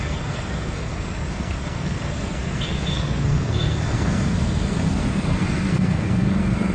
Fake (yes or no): yes